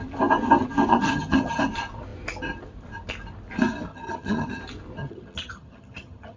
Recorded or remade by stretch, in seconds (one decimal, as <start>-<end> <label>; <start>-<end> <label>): 0.0-0.9 recorded; 0.9-1.6 remade; 1.6-3.9 recorded; 3.9-4.6 remade; 4.6-5.0 recorded; 5.0-6.4 remade